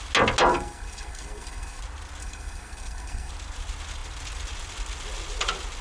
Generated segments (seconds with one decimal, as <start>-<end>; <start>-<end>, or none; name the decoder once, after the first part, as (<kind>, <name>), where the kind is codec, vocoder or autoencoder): 0.5-1.8 (codec, SNAC); 2.2-3.3